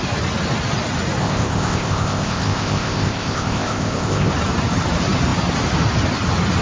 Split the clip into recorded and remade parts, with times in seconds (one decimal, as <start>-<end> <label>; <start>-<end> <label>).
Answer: 0.0-1.2 recorded; 1.2-4.3 remade; 4.3-6.6 recorded